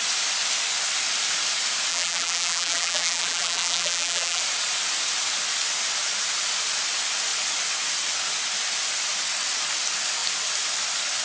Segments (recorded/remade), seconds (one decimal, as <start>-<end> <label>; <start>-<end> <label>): 0.0-1.9 recorded; 1.9-4.4 remade; 4.4-11.2 recorded